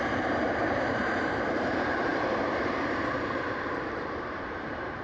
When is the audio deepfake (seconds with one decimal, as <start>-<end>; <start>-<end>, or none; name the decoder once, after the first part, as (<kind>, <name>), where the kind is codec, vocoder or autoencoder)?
0.0-5.0 (vocoder, BigVGAN v2)